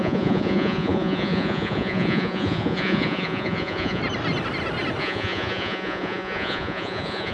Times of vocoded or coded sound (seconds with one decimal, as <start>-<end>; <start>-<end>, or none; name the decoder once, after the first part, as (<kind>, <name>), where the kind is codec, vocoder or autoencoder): 0.0-4.0 (vocoder, Vocos); 5.0-7.3